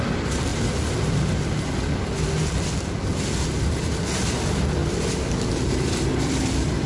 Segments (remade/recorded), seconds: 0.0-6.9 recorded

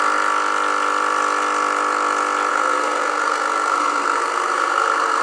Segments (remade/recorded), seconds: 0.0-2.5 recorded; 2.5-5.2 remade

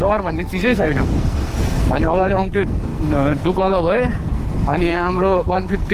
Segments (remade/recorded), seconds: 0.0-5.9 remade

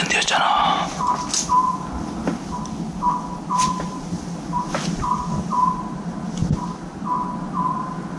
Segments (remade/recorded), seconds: 0.0-8.2 recorded